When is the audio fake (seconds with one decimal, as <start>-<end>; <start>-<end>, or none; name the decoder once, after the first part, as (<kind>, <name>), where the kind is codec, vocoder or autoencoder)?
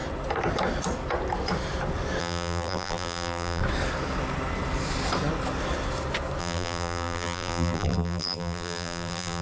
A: 2.2-3.6 (vocoder, BigVGAN v2); 6.4-9.4